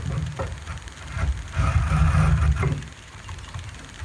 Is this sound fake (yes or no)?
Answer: yes